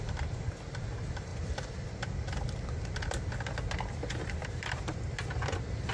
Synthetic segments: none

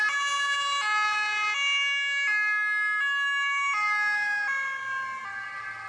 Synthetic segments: none

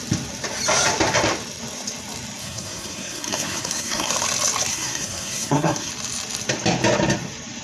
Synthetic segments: 2.4-4.1 (codec, SNAC); 4.7-5.9

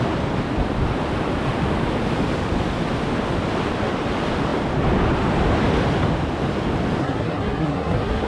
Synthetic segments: 7.0-8.3 (codec, SNAC)

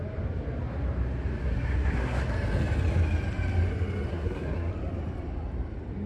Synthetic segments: 1.4-2.2 (codec, SNAC); 4.1-4.7

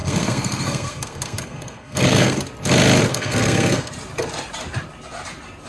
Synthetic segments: 0.0-2.4 (codec, SNAC); 3.1-3.9

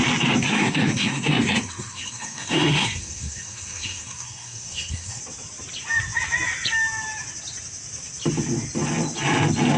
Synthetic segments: 0.5-5.2 (codec, SNAC)

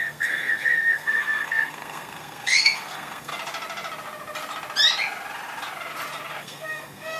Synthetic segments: 0.0-3.3 (codec, SNAC); 6.4-7.2